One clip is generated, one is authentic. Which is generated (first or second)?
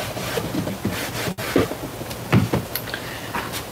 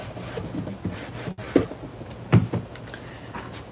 first